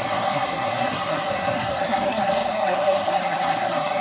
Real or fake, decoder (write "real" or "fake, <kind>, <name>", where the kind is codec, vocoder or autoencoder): fake, codec, SNAC